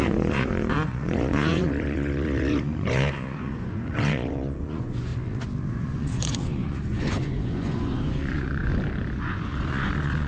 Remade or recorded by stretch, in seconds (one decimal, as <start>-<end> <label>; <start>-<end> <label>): 0.0-5.1 remade; 5.1-5.7 recorded; 5.7-8.7 remade; 8.7-9.2 recorded; 9.2-10.3 remade